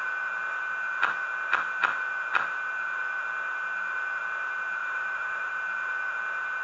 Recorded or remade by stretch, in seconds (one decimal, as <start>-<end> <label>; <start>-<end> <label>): 0.0-4.8 recorded; 4.8-5.5 remade; 5.5-6.6 recorded